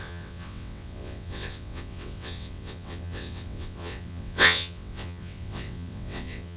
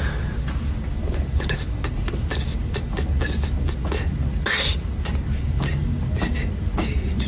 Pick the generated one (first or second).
first